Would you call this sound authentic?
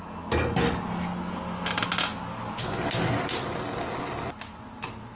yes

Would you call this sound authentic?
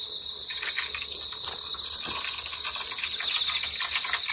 yes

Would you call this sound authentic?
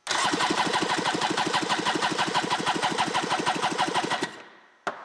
yes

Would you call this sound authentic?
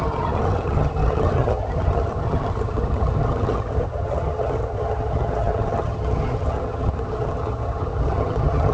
no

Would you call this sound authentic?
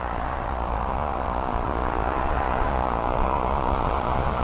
no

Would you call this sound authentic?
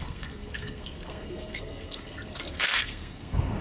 no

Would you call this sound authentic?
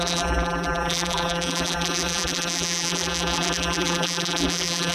no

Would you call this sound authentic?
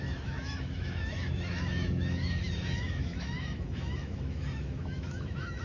no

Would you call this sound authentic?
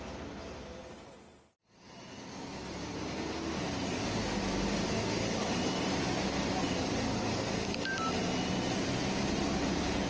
yes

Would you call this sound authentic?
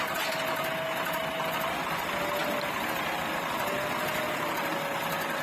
yes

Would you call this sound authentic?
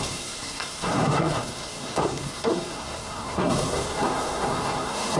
no